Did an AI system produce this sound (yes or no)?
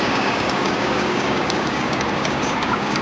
yes